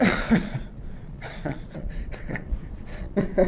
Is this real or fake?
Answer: fake